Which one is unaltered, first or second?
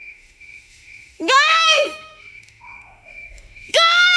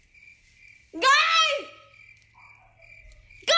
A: second